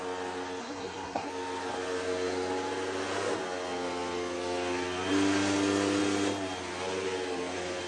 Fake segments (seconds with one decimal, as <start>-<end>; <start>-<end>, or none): 0.6-1.3